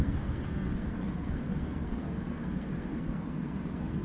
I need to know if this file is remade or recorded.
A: remade